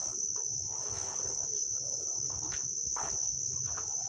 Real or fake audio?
fake